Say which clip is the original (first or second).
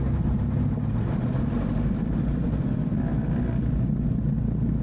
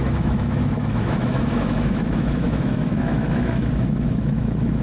first